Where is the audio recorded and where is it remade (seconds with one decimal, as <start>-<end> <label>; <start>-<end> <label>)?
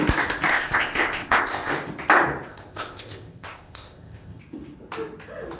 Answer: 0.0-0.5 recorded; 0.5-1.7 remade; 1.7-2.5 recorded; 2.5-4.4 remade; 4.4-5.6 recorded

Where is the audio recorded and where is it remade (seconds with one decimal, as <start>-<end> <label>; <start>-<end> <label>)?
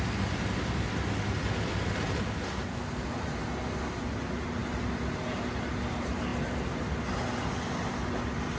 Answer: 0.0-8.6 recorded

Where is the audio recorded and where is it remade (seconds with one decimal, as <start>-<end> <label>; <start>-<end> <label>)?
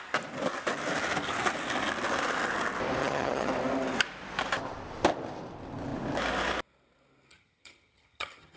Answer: 0.0-3.0 recorded; 3.0-3.5 remade; 3.5-7.3 recorded; 7.3-8.6 remade